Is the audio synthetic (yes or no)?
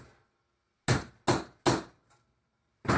no